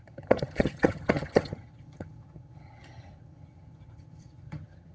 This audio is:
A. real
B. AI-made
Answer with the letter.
B